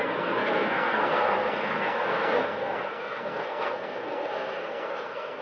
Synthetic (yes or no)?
yes